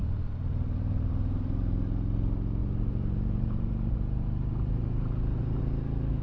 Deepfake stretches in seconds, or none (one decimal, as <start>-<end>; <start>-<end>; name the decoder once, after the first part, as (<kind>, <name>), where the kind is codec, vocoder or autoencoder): 0.0-1.6 (vocoder, BigVGAN v2); 2.6-5.6